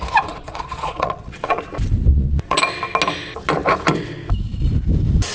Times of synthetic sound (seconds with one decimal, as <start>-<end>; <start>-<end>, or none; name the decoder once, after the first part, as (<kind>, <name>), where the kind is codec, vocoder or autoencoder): 0.4-1.6 (vocoder, Vocos); 2.1-2.6